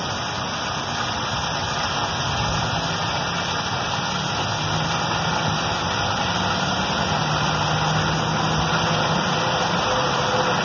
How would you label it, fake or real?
real